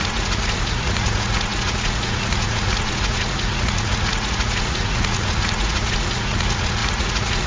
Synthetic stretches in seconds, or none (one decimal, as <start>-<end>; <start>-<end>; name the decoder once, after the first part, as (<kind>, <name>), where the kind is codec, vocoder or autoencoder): 0.0-7.5 (vocoder, Vocos)